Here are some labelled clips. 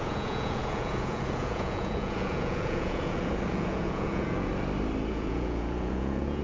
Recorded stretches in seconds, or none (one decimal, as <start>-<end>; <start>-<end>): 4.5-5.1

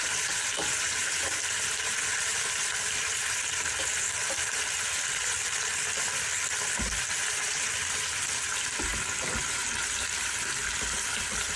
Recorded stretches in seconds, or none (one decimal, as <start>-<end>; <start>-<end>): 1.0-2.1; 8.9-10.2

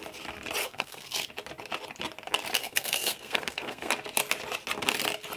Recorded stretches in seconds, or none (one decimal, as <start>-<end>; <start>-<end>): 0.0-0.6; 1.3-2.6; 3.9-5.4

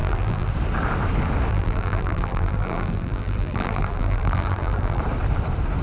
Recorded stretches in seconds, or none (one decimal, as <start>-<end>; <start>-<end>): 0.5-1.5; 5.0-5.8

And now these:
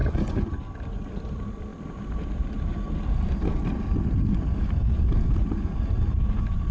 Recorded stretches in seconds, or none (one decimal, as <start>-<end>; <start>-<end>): 0.5-6.7

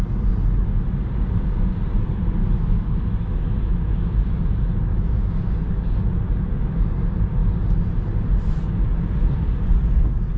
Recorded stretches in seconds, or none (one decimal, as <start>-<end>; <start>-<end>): 0.0-2.4; 3.9-4.9; 5.5-10.4

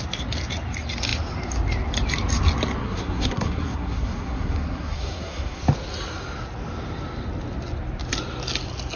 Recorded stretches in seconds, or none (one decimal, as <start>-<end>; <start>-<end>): 0.0-2.8; 5.6-9.0